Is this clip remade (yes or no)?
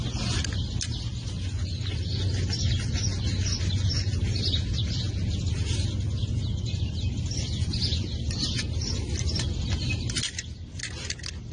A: no